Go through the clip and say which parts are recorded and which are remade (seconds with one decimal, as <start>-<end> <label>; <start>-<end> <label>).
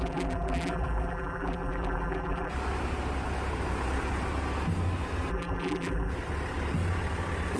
0.0-2.5 remade; 2.5-5.3 recorded; 5.3-6.1 remade; 6.1-7.6 recorded